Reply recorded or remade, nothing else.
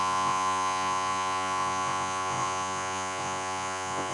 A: remade